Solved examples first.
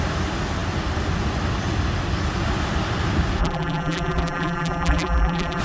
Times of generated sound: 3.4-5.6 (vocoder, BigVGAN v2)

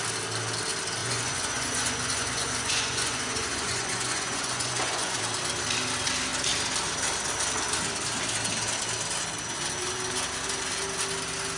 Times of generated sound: 1.0-5.2 (vocoder, Vocos)

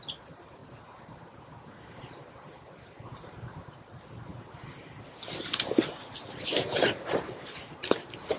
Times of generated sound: 0.0-0.6 (vocoder, BigVGAN v2); 2.0-4.3; 6.1-8.4

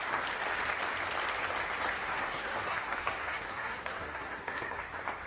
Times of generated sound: 1.9-4.8 (codec, SNAC)

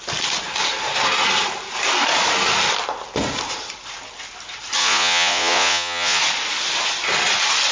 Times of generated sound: 4.8-6.2 (vocoder, Vocos)

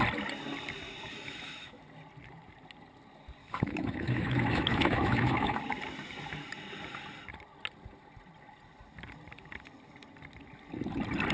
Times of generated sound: 1.1-1.8 (autoencoder, DAC-VAE); 3.4-5.6

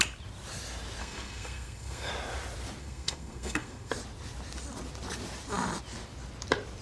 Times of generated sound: 1.0-2.1 (codec, SNAC); 2.8-3.9

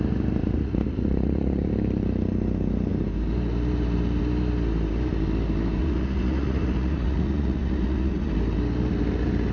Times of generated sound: 0.4-1.7 (vocoder, Vocos); 5.8-8.3